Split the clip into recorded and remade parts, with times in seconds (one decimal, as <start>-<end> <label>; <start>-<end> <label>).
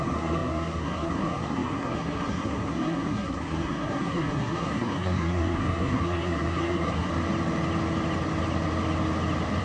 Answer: 0.0-7.1 remade; 7.1-9.6 recorded